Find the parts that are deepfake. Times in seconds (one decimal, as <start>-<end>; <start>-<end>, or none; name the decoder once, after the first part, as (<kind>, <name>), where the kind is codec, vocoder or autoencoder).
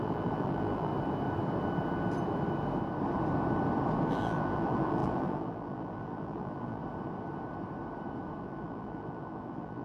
0.0-0.9 (vocoder, BigVGAN v2); 4.1-6.8; 8.4-9.8